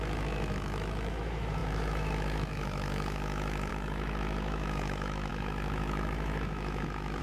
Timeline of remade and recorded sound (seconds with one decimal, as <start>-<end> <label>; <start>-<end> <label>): 0.0-7.2 remade